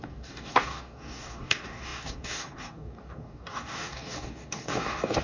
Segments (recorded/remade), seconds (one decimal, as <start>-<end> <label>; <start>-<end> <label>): 0.0-5.2 remade